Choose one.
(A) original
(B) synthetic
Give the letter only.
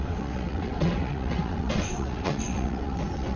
B